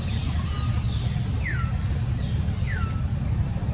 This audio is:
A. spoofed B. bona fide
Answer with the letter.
B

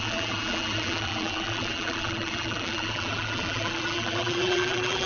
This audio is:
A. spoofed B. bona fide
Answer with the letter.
A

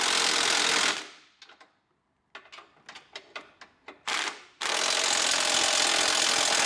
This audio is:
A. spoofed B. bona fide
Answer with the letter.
B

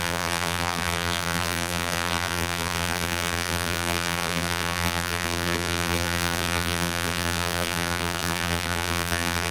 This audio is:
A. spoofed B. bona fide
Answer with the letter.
A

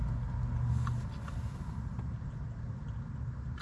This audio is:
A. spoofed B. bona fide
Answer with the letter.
B